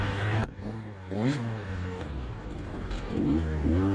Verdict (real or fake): fake